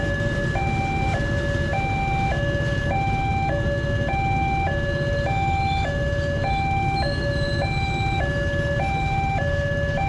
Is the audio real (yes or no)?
yes